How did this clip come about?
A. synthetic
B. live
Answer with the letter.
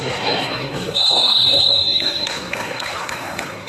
A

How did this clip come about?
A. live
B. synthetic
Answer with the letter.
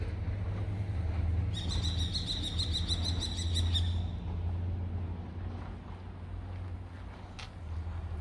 A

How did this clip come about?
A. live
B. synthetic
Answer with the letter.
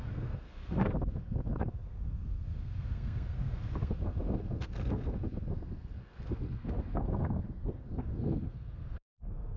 B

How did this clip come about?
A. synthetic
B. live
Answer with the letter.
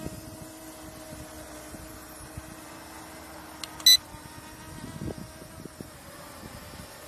B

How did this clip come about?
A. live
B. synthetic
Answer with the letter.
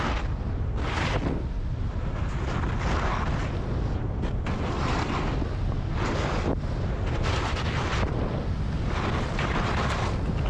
A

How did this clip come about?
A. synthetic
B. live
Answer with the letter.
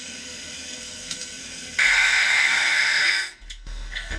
A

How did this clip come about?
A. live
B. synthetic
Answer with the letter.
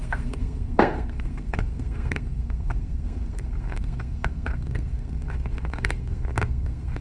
B